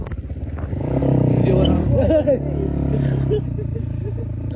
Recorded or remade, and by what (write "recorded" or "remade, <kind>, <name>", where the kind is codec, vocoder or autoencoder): recorded